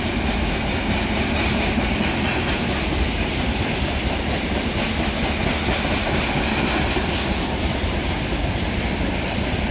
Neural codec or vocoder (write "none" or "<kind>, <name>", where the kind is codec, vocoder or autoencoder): none